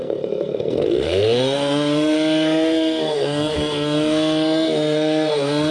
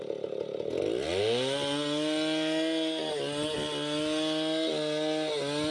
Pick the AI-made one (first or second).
first